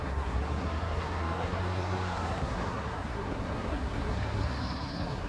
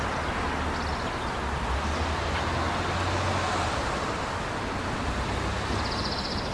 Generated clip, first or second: first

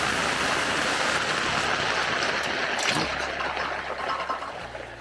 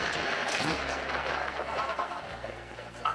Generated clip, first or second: second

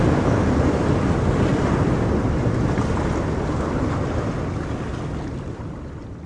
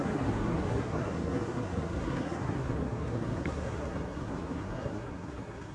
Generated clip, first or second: second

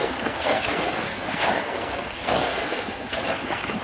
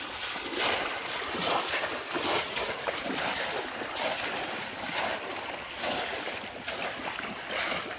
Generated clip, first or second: first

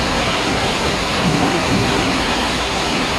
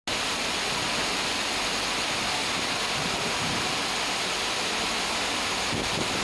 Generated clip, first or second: first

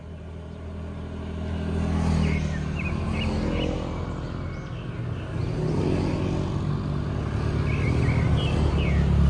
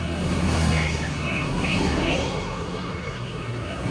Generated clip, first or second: second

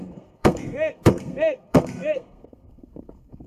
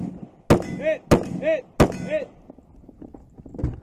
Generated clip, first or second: first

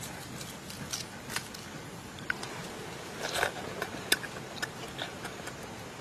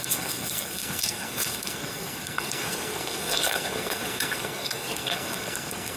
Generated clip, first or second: second